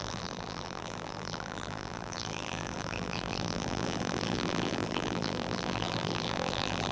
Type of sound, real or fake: fake